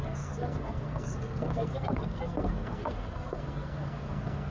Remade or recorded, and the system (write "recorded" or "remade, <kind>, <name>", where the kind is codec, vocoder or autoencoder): remade, codec, SNAC